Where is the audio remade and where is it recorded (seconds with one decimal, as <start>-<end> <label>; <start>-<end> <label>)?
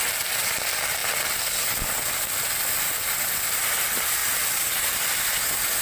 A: 0.0-5.8 recorded